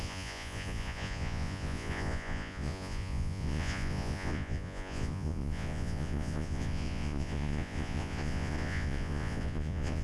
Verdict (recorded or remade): remade